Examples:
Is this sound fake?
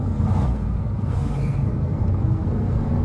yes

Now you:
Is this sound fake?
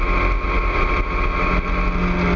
no